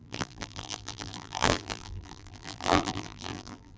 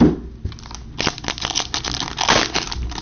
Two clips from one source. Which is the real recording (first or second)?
second